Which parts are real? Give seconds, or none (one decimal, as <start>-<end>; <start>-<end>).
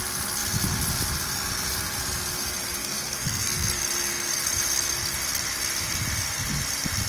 0.0-2.8; 3.8-7.1